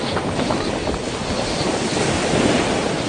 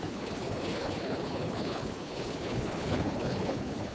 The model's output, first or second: second